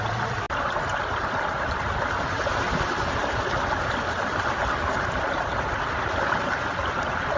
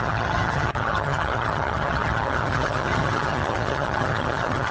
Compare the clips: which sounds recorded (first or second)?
first